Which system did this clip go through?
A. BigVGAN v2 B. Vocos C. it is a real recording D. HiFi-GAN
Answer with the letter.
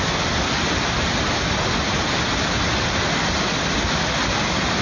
C